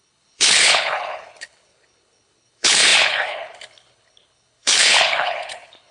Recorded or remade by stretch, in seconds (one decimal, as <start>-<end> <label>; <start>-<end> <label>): 0.0-5.9 remade